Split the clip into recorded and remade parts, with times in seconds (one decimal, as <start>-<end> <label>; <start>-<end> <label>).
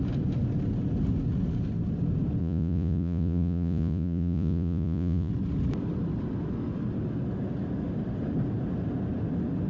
0.0-2.4 recorded; 2.4-5.3 remade; 5.3-9.7 recorded